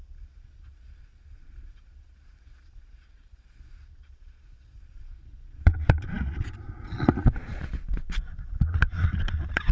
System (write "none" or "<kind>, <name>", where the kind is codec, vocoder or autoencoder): vocoder, Vocos